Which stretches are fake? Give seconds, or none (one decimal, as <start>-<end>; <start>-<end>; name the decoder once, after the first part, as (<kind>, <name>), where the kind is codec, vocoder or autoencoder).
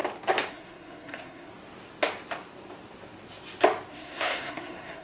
0.5-1.5 (codec, SNAC); 3.9-5.0